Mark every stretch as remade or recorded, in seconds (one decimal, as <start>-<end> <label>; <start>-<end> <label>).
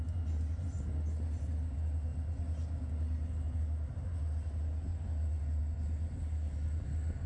0.0-7.3 recorded